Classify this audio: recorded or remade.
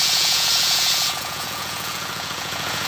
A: remade